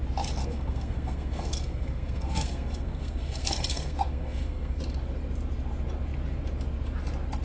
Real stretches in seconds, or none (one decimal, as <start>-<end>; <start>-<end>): 0.0-0.4; 4.8-7.4

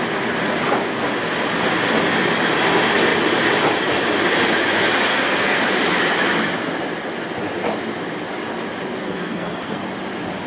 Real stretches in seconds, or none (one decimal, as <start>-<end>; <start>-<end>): 0.0-5.1; 5.6-9.0; 9.8-10.5